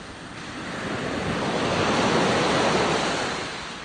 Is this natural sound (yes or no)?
yes